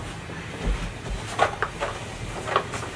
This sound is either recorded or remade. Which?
recorded